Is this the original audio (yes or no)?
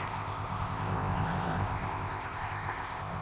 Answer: no